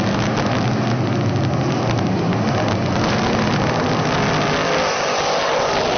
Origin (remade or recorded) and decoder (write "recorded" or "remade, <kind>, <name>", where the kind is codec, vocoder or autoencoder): recorded